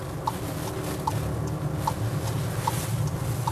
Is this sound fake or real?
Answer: real